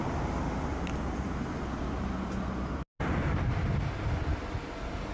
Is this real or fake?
real